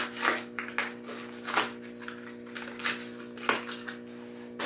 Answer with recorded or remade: recorded